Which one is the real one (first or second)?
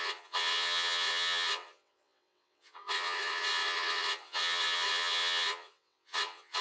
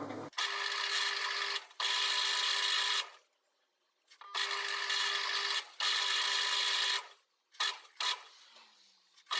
second